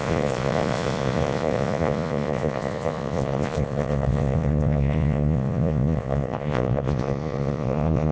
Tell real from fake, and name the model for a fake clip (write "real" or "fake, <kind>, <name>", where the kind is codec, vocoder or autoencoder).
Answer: fake, vocoder, Vocos